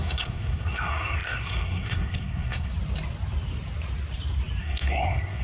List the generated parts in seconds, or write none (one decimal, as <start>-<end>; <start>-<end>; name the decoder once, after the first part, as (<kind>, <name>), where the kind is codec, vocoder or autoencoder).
0.0-2.7 (codec, SNAC); 4.6-5.4